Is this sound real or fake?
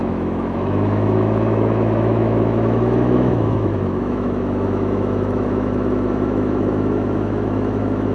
fake